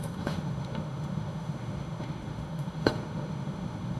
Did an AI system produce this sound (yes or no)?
yes